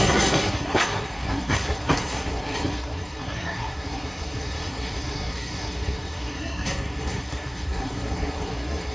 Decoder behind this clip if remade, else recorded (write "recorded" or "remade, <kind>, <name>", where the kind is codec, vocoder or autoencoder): remade, codec, SNAC